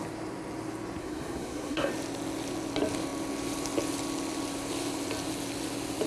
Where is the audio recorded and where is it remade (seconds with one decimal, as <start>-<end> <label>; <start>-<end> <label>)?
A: 0.0-1.0 recorded; 1.0-1.9 remade; 1.9-6.1 recorded